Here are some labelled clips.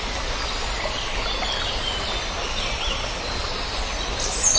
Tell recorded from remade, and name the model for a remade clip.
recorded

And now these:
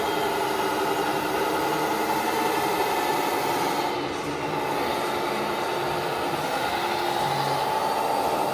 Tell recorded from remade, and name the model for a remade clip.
recorded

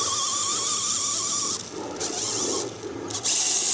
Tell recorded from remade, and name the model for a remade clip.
recorded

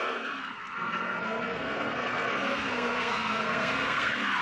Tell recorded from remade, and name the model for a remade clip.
remade, codec, SNAC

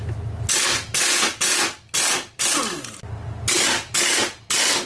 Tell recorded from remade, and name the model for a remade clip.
recorded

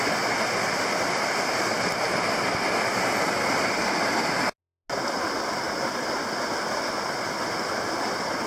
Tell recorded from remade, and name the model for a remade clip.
recorded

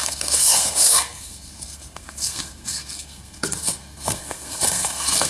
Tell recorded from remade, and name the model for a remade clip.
remade, codec, SNAC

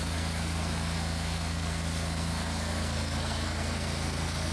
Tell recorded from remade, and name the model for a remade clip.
remade, codec, SNAC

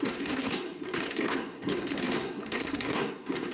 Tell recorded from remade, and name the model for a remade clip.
remade, codec, SNAC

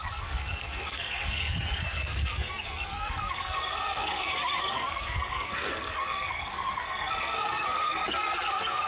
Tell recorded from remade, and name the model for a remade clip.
remade, codec, SNAC